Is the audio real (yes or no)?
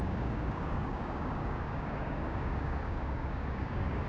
no